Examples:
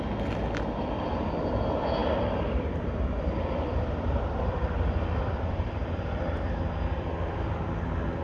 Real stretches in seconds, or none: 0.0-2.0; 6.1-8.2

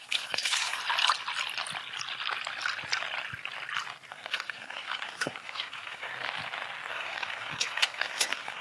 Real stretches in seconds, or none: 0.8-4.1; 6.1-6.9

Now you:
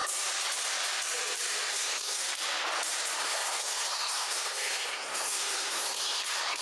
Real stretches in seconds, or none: 0.0-1.7; 2.2-3.2

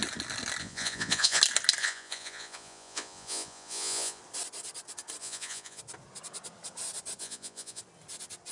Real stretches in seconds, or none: 0.0-0.6; 1.4-1.8; 4.2-5.2; 5.8-7.2; 7.8-8.5

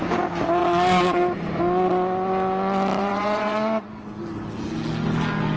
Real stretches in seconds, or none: 0.0-3.0; 3.9-5.6